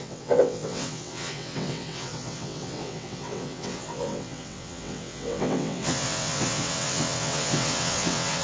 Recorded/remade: remade